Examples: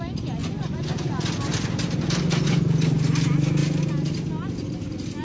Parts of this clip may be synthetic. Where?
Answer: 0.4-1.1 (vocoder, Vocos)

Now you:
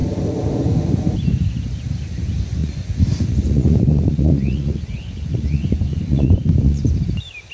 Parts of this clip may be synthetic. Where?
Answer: 2.6-6.9 (vocoder, Vocos)

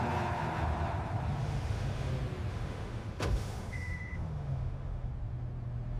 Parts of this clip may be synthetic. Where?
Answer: 1.4-2.1 (autoencoder, DAC-VAE); 2.5-5.1

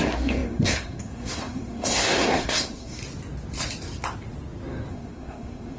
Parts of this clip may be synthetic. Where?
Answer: 0.0-3.0 (codec, SNAC); 4.9-5.8

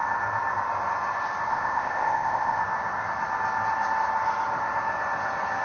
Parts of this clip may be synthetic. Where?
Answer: 1.5-2.6 (codec, ZipCodec)

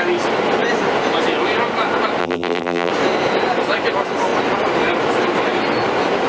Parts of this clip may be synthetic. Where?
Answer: 2.2-2.9 (vocoder, BigVGAN v2)